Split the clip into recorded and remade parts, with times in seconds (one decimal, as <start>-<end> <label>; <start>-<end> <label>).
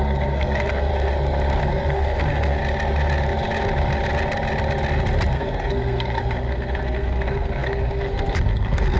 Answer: 0.0-0.9 remade; 0.9-1.6 recorded; 1.6-2.6 remade; 2.6-5.3 recorded; 5.3-9.0 remade